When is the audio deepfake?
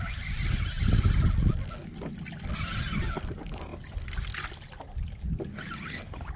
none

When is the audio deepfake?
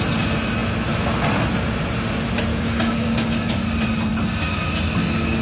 2.5-3.5 (codec, DAC)